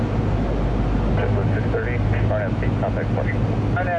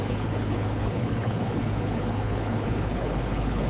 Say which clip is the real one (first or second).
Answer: first